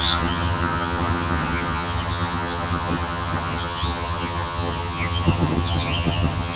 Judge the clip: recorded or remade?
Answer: remade